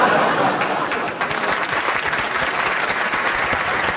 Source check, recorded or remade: recorded